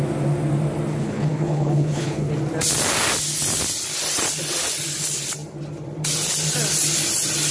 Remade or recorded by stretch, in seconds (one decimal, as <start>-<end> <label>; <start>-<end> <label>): 0.0-1.0 recorded; 1.0-2.3 remade; 2.3-7.5 recorded